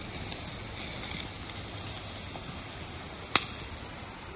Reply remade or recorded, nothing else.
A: recorded